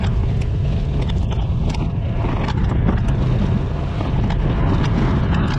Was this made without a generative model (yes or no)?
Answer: yes